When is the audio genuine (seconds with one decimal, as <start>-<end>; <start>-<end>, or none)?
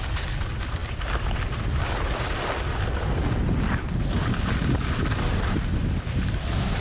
0.0-6.8